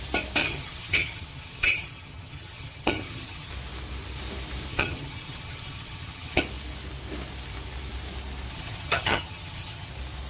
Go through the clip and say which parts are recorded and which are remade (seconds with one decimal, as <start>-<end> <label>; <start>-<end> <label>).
0.0-0.4 recorded; 0.4-3.5 remade; 3.5-4.7 recorded; 4.7-6.4 remade; 6.4-8.5 recorded; 8.5-9.9 remade; 9.9-10.3 recorded